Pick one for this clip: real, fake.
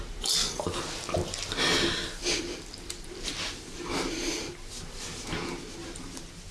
real